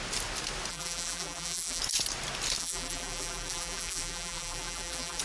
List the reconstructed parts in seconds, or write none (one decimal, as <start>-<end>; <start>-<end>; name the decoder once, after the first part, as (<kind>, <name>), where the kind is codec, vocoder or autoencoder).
0.7-1.8 (vocoder, BigVGAN v2); 2.6-5.2